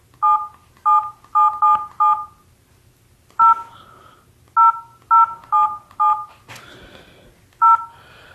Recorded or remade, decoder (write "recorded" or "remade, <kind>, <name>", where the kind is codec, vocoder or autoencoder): recorded